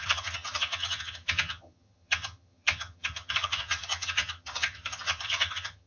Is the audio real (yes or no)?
no